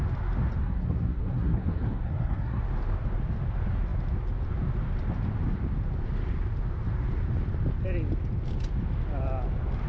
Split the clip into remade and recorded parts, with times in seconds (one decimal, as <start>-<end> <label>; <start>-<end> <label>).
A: 0.0-0.6 recorded; 0.6-2.6 remade; 2.6-9.9 recorded